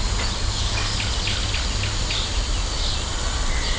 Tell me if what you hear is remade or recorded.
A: recorded